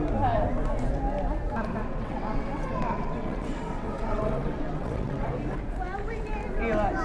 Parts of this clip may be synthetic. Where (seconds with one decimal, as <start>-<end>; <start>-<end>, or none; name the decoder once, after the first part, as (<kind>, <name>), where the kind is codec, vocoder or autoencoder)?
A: 1.8-5.3 (vocoder, WaveNeXt)